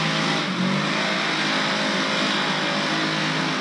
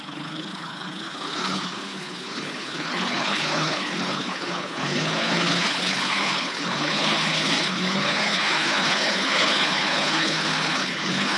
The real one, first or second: first